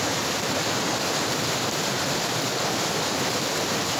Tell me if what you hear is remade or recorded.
recorded